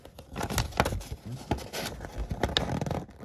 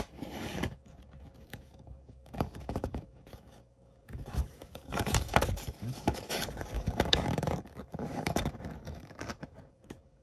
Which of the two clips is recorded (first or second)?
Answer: first